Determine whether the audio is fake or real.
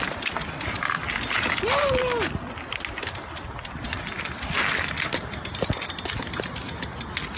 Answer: real